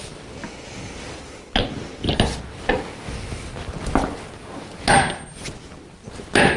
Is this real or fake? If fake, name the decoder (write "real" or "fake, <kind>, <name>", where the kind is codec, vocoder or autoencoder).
real